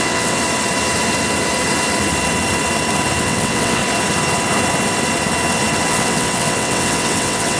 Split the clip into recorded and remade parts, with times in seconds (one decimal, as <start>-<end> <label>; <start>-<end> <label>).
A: 0.0-0.4 remade; 0.4-3.2 recorded; 3.2-3.8 remade; 3.8-5.9 recorded; 5.9-7.6 remade

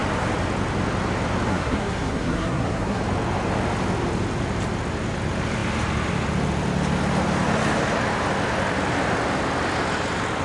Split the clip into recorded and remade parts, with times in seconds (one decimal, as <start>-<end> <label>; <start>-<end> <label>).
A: 0.0-1.5 recorded; 1.5-3.0 remade; 3.0-10.4 recorded

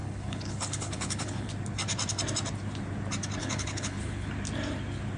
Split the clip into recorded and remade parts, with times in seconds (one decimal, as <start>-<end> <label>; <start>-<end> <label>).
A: 0.0-1.5 remade; 1.5-3.4 recorded; 3.4-4.3 remade; 4.3-5.2 recorded

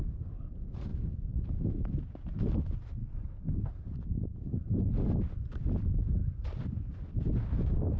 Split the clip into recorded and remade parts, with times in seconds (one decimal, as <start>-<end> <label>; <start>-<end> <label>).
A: 0.0-0.9 remade; 0.9-1.4 recorded; 1.4-6.2 remade; 6.2-8.0 recorded

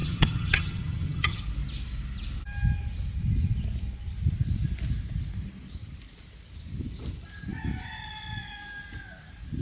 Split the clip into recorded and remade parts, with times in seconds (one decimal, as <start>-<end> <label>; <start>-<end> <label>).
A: 0.0-1.4 remade; 1.4-9.6 recorded